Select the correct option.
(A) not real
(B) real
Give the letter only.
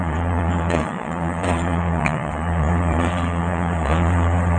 A